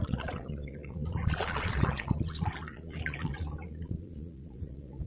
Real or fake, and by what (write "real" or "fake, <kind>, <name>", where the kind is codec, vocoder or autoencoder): fake, vocoder, Vocos